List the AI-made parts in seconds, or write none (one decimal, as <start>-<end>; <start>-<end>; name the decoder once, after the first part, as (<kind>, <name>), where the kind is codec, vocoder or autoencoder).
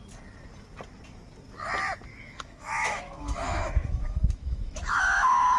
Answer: 2.1-5.6 (autoencoder, DAC-VAE)